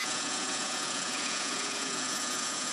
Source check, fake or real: fake